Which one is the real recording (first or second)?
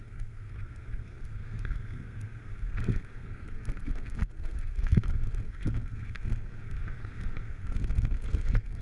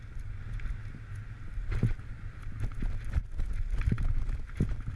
second